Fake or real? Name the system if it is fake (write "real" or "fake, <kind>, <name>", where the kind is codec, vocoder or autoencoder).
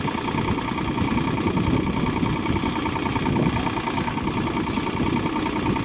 real